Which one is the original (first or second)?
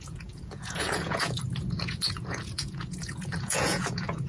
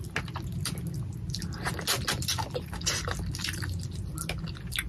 second